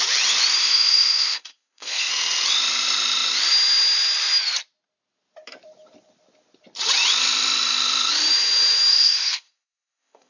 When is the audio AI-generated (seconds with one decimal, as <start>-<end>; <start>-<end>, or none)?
0.6-2.1; 8.9-10.3